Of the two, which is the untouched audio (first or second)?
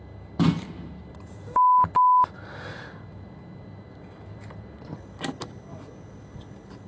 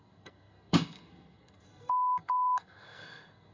first